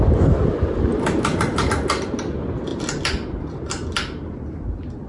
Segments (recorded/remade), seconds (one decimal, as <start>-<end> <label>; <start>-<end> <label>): 0.0-0.9 recorded; 0.9-1.6 remade; 1.6-5.1 recorded